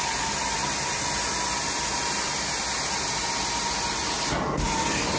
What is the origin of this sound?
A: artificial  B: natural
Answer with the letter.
B